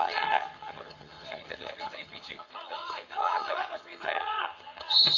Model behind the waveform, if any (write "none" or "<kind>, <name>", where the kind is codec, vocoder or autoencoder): vocoder, HiFi-GAN